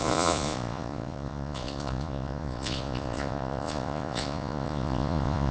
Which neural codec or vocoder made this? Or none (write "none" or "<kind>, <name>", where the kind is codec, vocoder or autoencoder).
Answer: vocoder, Vocos